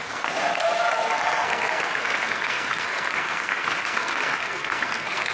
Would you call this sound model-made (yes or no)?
yes